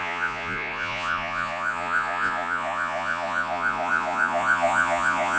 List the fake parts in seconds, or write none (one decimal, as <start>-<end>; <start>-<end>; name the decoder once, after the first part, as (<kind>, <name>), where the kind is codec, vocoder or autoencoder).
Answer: 0.0-5.4 (vocoder, Vocos)